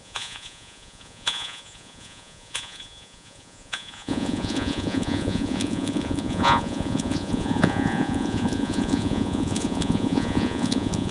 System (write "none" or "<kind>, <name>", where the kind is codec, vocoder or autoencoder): vocoder, Vocos